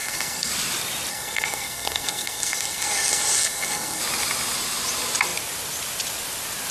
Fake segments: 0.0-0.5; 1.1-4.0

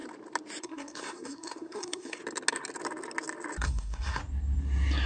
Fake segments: 0.6-2.2; 3.6-4.2